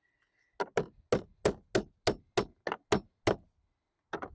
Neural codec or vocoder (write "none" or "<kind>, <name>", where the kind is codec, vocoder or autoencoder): none